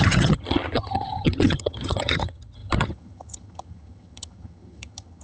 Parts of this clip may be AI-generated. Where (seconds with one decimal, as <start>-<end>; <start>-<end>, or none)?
0.0-5.2